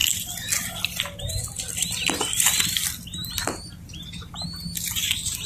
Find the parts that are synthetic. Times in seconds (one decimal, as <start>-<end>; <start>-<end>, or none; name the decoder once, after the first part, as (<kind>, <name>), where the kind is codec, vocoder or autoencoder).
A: 0.0-5.5 (vocoder, BigVGAN v2)